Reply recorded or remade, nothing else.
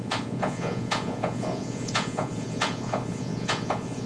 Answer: remade